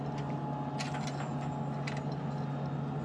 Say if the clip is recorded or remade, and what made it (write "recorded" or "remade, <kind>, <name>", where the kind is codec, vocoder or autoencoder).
recorded